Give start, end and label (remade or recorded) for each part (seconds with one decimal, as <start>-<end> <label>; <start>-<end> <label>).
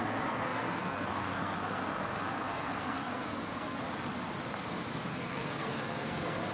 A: 0.0-3.8 remade; 3.8-5.1 recorded; 5.1-6.5 remade